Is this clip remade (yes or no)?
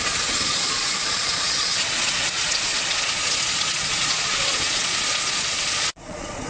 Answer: yes